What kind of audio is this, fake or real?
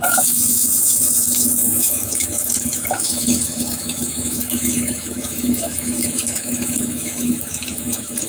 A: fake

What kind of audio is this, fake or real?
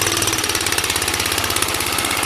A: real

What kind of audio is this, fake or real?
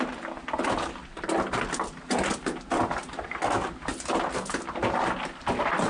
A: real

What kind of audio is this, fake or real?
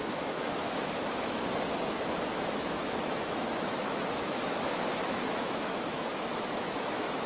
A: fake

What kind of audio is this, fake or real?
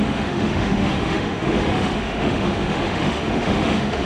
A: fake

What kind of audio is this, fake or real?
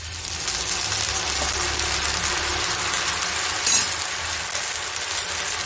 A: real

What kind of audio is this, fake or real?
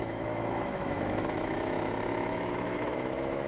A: fake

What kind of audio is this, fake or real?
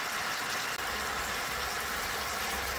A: real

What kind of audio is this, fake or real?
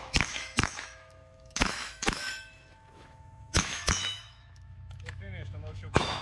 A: fake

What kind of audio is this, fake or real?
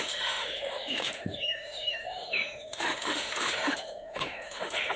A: fake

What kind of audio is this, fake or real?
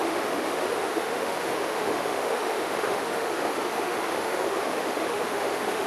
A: fake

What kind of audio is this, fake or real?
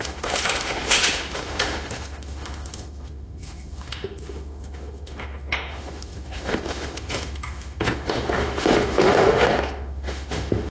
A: fake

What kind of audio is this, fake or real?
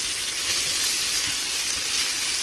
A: real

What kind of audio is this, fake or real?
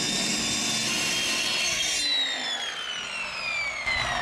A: real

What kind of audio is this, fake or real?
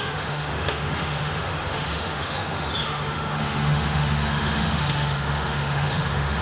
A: fake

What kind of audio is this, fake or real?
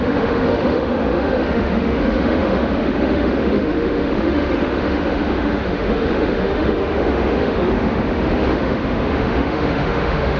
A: fake